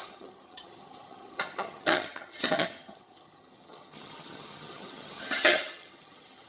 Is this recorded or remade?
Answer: remade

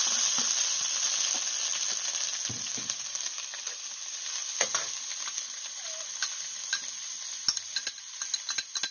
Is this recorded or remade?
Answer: recorded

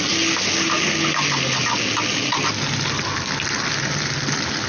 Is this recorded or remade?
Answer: recorded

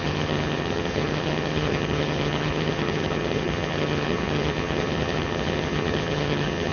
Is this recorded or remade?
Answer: remade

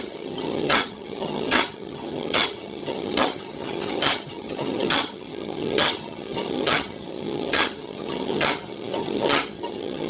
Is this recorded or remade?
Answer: remade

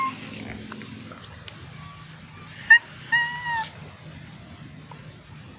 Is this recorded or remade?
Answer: recorded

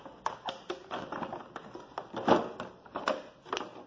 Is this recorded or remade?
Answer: recorded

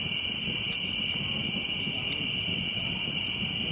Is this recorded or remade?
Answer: recorded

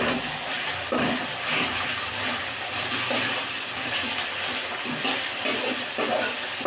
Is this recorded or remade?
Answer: recorded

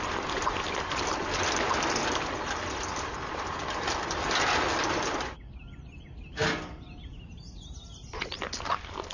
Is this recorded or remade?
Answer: recorded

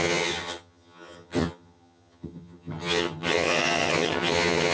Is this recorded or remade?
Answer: remade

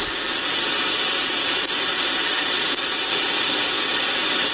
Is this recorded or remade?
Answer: recorded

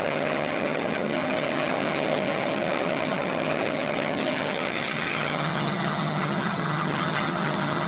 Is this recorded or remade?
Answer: remade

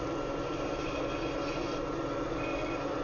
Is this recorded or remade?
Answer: recorded